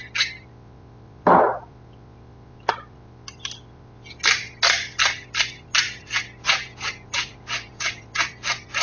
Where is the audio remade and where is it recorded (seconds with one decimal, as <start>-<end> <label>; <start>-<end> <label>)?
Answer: 0.0-6.4 recorded; 6.4-8.3 remade; 8.3-8.8 recorded